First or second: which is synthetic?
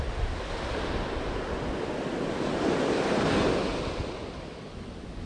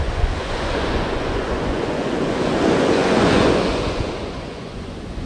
second